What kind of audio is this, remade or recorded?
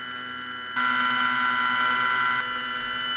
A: recorded